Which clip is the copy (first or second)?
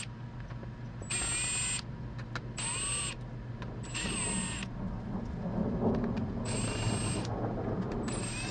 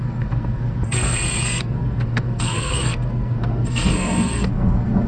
second